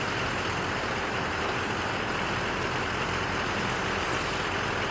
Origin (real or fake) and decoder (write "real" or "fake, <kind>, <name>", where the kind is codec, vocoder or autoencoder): real